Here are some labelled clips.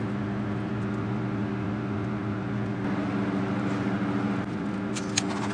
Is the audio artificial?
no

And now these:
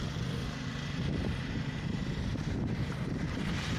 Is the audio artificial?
yes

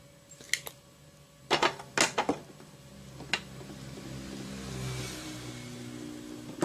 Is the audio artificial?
no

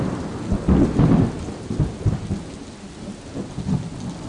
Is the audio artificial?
no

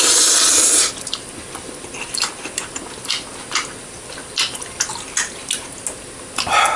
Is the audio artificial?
no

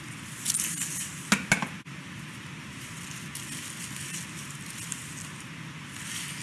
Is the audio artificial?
no